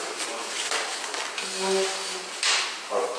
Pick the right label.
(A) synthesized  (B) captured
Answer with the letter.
B